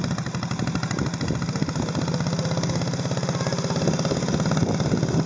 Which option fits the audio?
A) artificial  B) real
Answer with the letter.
B